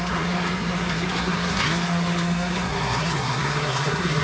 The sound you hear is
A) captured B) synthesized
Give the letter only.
B